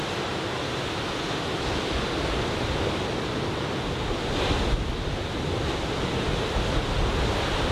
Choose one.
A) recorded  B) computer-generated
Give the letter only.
A